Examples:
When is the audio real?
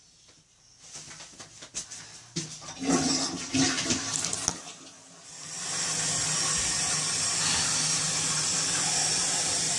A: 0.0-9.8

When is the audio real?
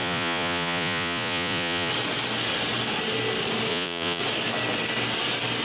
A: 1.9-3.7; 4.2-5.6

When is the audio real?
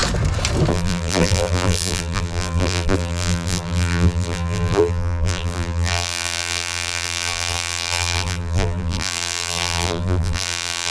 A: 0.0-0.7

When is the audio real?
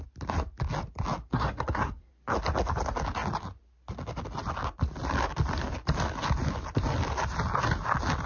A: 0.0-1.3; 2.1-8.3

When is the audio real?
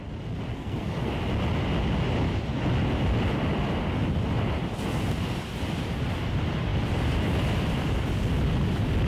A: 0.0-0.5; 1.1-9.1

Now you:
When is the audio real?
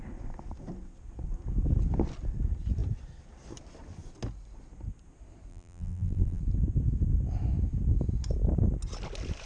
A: 0.0-5.5; 6.4-9.5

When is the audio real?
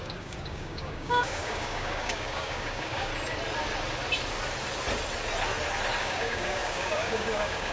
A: 3.1-6.0